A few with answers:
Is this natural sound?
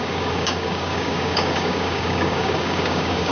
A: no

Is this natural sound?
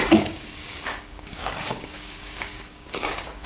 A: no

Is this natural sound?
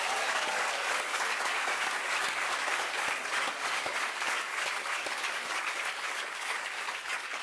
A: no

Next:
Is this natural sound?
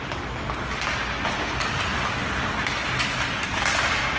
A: yes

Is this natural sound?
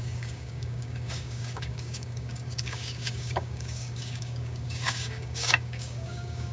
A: no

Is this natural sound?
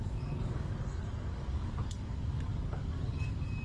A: no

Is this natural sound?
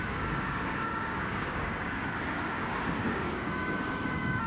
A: no